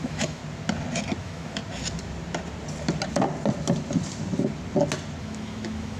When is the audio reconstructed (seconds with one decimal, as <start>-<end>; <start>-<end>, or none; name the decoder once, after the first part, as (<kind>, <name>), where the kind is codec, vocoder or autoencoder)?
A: 0.0-0.4 (autoencoder, DAC-VAE); 1.2-1.6; 5.2-6.0